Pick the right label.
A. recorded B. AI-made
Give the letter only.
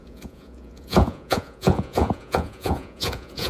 B